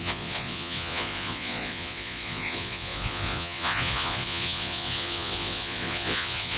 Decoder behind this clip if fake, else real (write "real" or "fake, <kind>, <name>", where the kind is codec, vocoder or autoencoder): fake, vocoder, Vocos